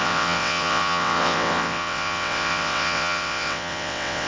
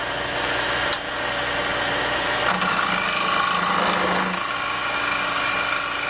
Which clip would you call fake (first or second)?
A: first